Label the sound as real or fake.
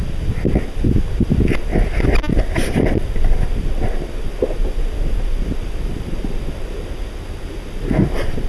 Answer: real